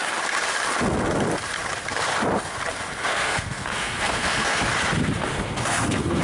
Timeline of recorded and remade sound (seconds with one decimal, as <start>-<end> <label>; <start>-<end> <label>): 0.0-3.1 recorded; 3.1-4.6 remade; 4.6-5.3 recorded; 5.3-6.2 remade